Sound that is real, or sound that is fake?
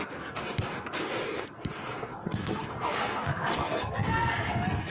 fake